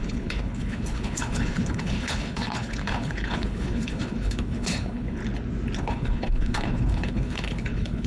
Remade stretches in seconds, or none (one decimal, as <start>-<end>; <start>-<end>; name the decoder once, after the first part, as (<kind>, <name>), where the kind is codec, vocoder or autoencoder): 0.0-5.2 (codec, HILCodec); 5.8-8.1